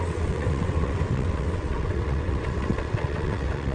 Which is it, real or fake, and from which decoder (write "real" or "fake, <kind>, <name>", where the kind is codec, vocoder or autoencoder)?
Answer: fake, vocoder, WaveNeXt